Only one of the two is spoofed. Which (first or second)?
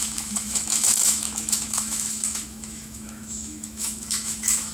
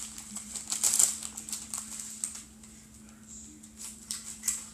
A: first